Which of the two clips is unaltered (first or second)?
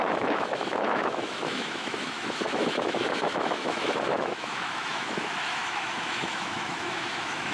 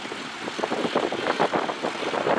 second